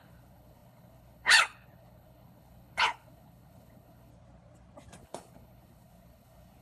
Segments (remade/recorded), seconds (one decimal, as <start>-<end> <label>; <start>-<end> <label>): 0.0-4.1 remade; 4.1-5.0 recorded; 5.0-6.6 remade